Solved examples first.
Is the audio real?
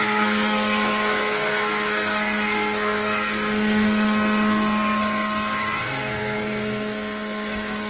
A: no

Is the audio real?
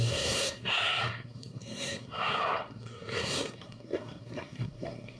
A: no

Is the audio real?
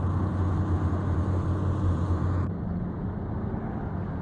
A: yes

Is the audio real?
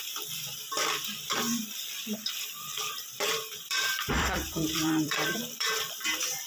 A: no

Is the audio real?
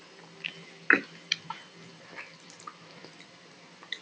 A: yes